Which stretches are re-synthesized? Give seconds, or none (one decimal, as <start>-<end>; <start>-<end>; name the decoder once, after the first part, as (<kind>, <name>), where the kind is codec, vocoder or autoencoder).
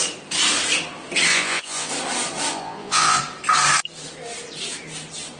1.3-1.9 (vocoder, Vocos); 2.5-3.2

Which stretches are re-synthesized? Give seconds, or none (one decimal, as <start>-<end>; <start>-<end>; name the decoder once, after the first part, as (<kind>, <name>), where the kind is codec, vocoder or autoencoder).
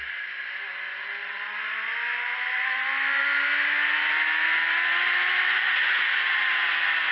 none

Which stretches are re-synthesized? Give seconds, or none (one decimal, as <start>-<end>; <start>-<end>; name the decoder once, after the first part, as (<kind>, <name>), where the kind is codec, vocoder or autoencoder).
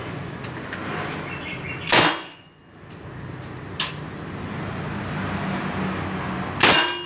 0.0-0.4 (vocoder, Vocos); 1.8-2.6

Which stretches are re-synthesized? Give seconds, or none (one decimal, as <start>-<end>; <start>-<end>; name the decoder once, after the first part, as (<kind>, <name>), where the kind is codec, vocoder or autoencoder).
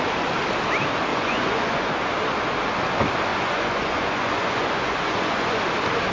1.1-1.9 (vocoder, Vocos); 3.3-5.6